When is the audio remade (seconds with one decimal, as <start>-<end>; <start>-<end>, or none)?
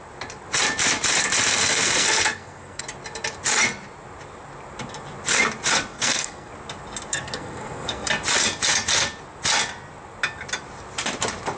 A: 1.5-2.8; 5.9-6.5; 7.1-8.1